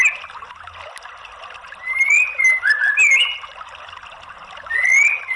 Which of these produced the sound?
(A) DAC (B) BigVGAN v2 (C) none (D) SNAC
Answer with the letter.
C